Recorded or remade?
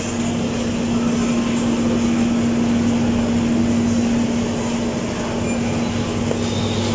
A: recorded